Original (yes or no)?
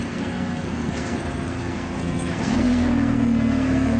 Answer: no